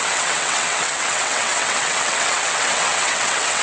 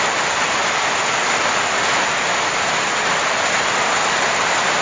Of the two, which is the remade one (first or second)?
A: first